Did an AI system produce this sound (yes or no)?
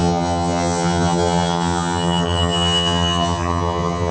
yes